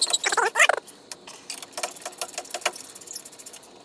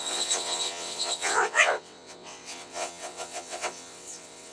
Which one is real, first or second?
first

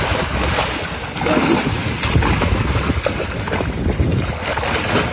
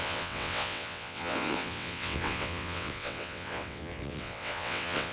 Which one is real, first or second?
first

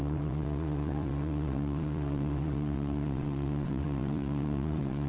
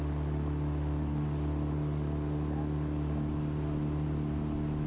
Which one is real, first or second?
second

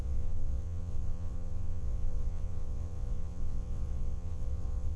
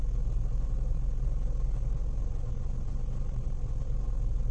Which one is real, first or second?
second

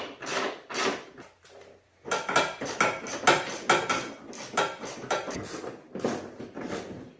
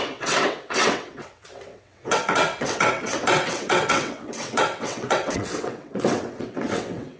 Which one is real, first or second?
first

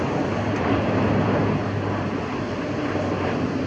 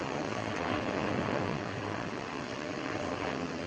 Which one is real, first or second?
first